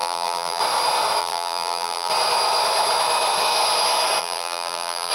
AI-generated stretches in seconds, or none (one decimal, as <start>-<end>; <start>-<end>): 0.0-0.6; 1.2-2.1; 4.2-5.1